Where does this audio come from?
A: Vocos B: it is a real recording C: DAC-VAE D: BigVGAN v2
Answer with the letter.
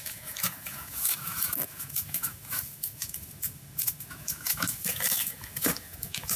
C